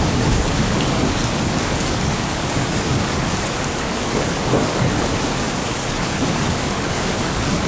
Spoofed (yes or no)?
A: yes